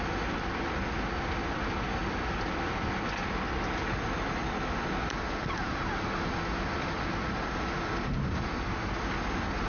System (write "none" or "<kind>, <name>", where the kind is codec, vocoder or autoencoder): none